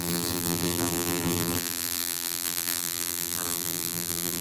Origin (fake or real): fake